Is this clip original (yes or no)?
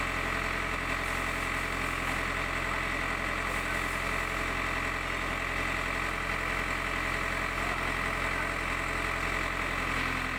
yes